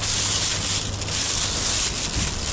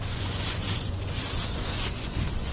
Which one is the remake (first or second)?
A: second